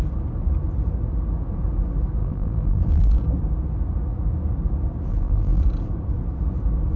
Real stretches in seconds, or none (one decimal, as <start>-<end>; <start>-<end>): 0.0-2.2; 3.2-5.1; 5.6-7.0